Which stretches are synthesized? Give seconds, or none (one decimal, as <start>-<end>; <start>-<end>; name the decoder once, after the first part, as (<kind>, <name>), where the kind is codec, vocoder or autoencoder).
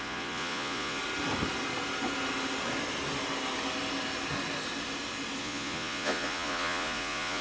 0.0-1.0 (vocoder, Vocos); 5.4-7.4